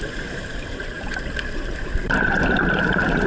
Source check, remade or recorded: remade